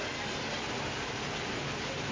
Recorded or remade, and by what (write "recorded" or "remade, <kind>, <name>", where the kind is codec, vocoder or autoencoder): recorded